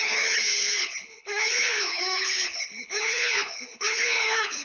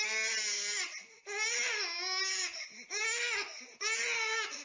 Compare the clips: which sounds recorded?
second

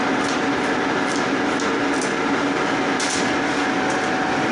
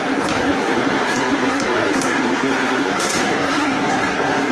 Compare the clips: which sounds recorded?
first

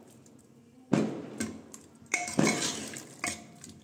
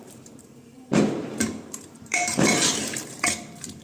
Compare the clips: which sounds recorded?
first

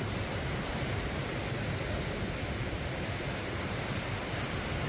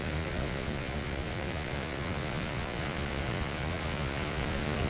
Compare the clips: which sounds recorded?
first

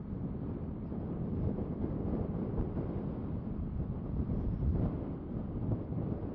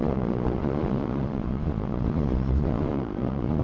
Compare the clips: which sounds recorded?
first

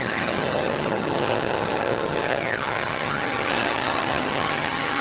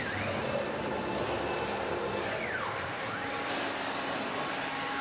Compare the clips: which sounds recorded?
second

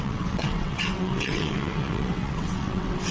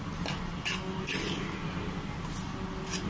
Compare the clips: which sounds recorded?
second